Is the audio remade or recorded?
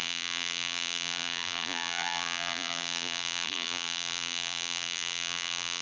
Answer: remade